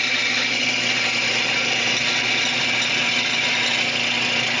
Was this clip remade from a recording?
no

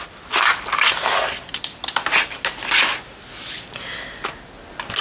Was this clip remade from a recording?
no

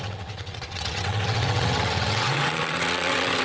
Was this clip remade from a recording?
yes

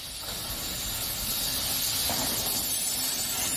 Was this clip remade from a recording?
no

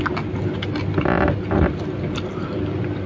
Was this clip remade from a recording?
no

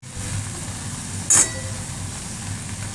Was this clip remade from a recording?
no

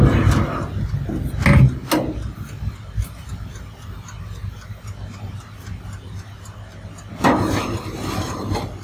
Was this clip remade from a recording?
no